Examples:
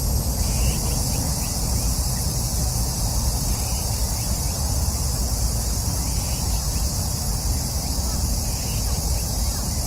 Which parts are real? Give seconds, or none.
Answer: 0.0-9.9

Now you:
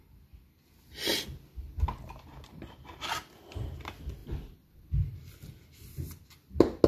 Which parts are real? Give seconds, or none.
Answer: 0.0-6.9

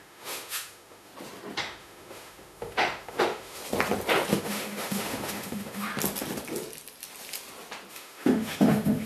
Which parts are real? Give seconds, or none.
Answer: 1.1-1.6; 3.6-4.3; 5.9-7.9

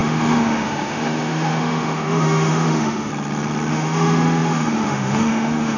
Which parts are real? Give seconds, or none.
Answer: 3.1-3.7

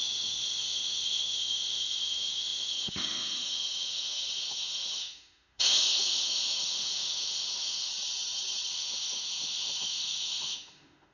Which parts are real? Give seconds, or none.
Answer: 7.9-8.7

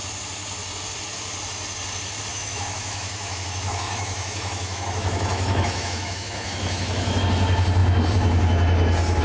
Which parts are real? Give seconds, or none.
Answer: 0.0-2.3; 7.2-9.2

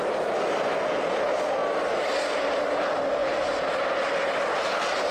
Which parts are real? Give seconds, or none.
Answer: 0.0-5.1

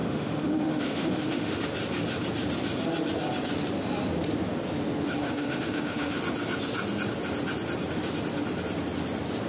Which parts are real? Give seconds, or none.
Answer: 1.6-5.2; 6.2-9.5